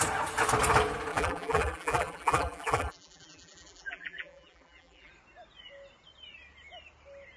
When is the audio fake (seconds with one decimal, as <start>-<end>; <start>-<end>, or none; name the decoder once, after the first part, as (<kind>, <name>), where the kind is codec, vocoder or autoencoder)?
1.1-5.1 (vocoder, BigVGAN v2)